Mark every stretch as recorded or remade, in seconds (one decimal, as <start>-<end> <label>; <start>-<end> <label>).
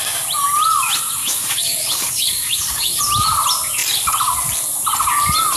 0.0-1.2 recorded; 1.2-3.0 remade; 3.0-5.6 recorded